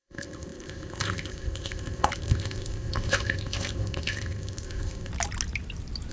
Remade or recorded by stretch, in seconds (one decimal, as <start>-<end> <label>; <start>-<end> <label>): 0.0-5.1 remade; 5.1-6.1 recorded